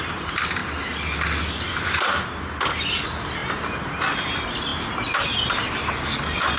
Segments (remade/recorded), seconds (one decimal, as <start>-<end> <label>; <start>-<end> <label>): 0.0-6.6 recorded